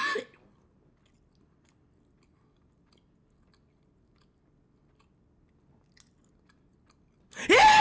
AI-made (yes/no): no